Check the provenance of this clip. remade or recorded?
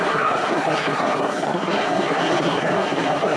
remade